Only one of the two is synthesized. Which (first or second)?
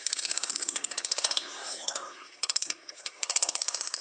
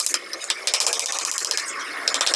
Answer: first